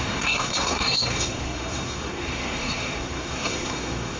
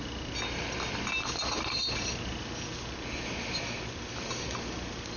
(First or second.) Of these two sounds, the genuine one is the second